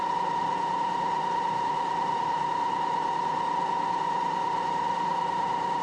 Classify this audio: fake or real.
real